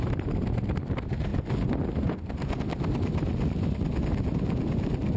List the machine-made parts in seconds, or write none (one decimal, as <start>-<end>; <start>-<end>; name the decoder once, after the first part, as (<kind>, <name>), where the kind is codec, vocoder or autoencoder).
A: none